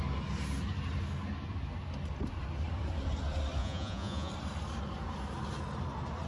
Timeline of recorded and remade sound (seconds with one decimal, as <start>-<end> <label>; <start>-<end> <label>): 0.0-3.6 recorded; 3.6-4.3 remade; 4.3-6.3 recorded